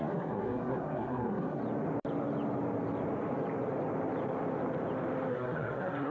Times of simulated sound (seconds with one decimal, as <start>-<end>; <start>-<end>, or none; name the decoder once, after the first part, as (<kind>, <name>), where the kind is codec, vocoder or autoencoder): 0.0-1.6 (codec, SNAC); 5.3-6.1

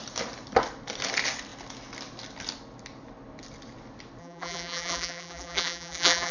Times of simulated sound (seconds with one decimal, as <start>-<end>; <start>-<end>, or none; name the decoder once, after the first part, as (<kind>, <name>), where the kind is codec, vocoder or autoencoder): 4.2-6.3 (vocoder, BigVGAN v2)

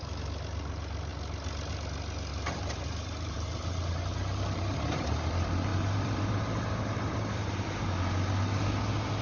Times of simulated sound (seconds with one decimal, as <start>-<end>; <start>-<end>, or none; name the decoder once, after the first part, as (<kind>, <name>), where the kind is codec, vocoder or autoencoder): 2.3-5.3 (vocoder, BigVGAN v2); 5.7-7.9

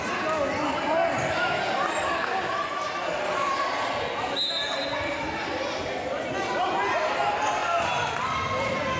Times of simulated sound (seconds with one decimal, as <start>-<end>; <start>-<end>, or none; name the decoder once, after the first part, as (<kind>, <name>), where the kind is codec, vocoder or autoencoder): none

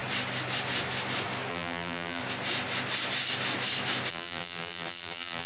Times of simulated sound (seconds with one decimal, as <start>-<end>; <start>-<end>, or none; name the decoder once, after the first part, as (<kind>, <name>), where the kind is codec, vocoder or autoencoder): 1.5-2.2 (vocoder, BigVGAN v2); 4.1-5.5